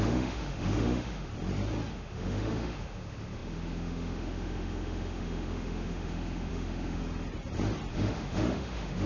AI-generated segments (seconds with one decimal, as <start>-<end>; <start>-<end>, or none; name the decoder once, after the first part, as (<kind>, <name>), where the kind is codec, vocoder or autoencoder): 0.0-1.3 (autoencoder, DAC-VAE); 1.9-7.0; 7.9-9.1